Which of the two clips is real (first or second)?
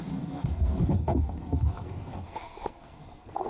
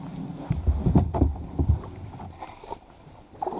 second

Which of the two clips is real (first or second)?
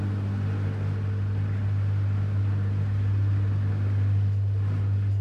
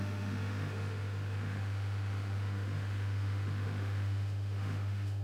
first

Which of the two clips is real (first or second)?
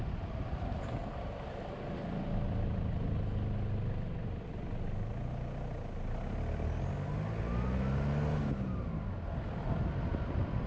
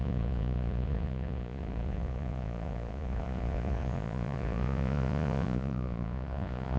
first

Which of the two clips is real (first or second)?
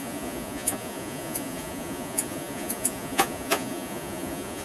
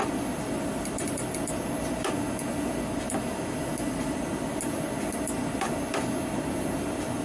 second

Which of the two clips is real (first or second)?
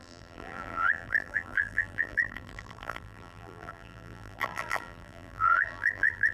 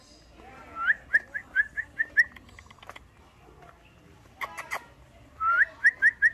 second